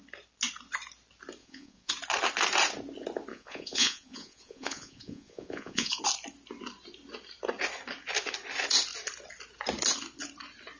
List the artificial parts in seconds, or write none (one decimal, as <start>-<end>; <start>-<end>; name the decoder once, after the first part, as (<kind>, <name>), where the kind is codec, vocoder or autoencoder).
1.4-1.9 (vocoder, Vocos); 3.3-6.0